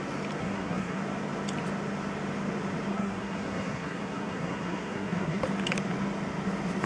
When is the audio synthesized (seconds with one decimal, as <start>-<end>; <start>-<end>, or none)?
0.4-1.0; 2.9-5.4